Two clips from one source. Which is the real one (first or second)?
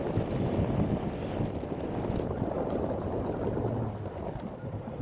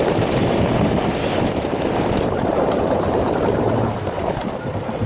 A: first